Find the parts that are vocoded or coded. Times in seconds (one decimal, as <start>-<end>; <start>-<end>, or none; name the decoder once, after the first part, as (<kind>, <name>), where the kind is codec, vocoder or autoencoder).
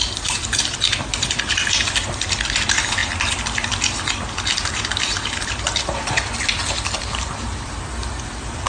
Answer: 0.0-8.7 (vocoder, BigVGAN v2)